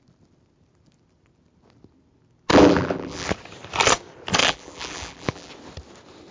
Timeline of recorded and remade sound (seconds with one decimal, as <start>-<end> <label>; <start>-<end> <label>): 0.0-2.5 recorded; 2.5-3.3 remade; 3.3-4.4 recorded; 4.4-5.5 remade; 5.5-6.3 recorded